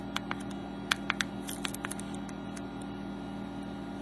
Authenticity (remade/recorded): recorded